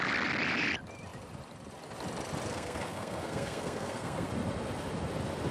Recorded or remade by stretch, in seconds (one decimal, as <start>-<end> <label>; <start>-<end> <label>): 0.0-2.5 recorded; 2.5-4.3 remade; 4.3-5.5 recorded